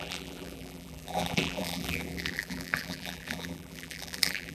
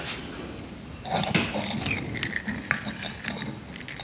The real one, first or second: second